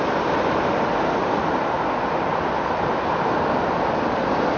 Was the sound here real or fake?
real